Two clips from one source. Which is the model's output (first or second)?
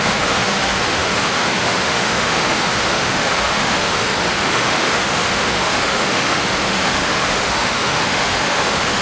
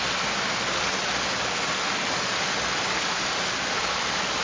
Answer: first